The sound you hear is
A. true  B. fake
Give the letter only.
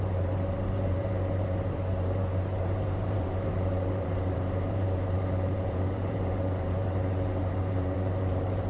B